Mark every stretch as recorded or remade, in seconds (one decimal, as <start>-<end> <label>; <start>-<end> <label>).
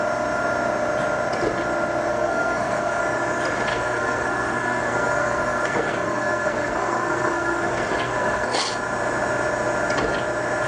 0.0-2.1 recorded; 2.1-3.0 remade; 3.0-3.7 recorded; 3.7-8.6 remade; 8.6-10.7 recorded